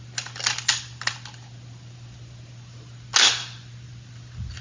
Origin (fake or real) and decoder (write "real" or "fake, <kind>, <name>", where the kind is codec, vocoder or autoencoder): real